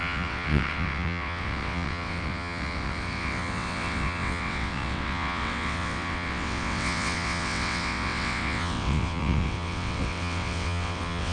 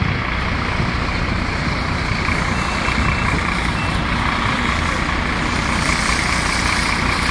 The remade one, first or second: first